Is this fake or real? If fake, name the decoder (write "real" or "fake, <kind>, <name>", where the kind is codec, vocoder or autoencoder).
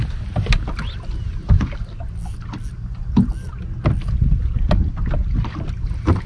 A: real